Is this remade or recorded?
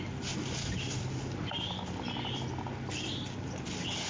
recorded